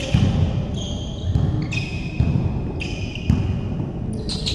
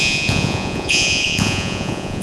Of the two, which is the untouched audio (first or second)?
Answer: first